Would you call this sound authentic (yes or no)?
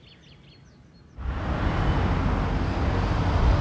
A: yes